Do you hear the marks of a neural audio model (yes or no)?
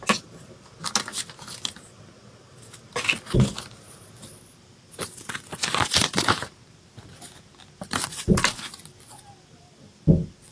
no